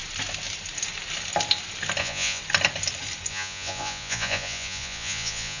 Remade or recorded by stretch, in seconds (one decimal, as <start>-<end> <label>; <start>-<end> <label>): 0.0-2.0 recorded; 2.0-2.4 remade; 2.4-3.3 recorded; 3.3-5.6 remade

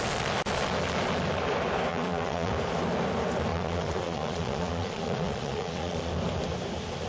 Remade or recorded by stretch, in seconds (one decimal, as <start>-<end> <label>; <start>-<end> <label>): 0.0-1.9 recorded; 1.9-2.5 remade; 2.5-3.5 recorded; 3.5-6.1 remade; 6.1-7.1 recorded

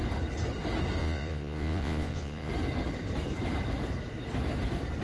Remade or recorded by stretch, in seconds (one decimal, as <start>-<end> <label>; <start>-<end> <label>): 0.0-1.0 recorded; 1.0-2.5 remade; 2.5-5.0 recorded

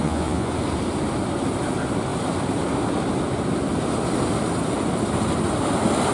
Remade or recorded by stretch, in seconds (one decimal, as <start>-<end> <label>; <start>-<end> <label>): 0.0-0.5 remade; 0.5-6.1 recorded

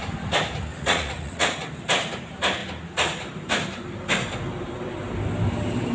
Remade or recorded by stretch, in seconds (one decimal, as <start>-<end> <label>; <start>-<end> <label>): 0.0-0.7 recorded; 0.7-1.5 remade; 1.5-5.9 recorded